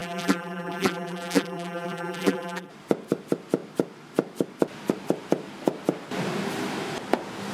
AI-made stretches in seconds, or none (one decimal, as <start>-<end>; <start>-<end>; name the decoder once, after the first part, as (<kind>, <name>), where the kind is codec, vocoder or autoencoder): 0.0-2.7 (vocoder, BigVGAN v2)

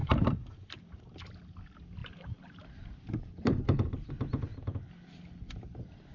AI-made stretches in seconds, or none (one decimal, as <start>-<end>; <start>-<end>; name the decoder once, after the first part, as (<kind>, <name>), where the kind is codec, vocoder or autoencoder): 0.0-1.0 (vocoder, BigVGAN v2); 2.0-4.1